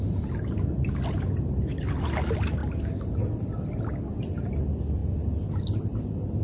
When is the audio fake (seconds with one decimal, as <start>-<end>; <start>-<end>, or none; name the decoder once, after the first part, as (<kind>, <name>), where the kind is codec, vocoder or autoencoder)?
none